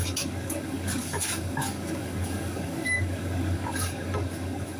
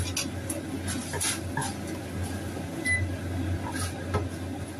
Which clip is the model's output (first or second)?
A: first